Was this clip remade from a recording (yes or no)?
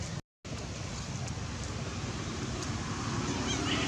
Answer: no